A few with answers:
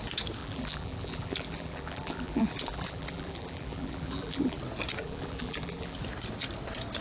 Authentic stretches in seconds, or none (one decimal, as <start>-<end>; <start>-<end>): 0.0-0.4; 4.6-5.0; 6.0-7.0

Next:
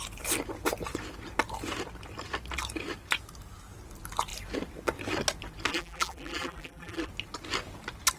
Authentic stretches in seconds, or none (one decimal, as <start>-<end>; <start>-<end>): 0.0-5.7; 7.1-8.2

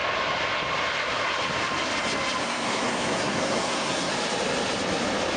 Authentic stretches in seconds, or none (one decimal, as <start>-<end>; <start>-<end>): 0.0-2.4; 4.1-5.4